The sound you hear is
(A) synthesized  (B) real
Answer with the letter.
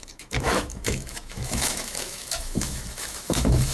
A